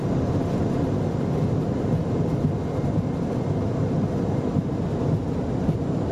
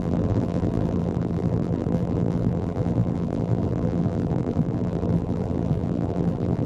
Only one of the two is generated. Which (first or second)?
second